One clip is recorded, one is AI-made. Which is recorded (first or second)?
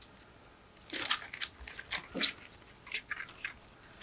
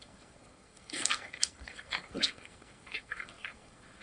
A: first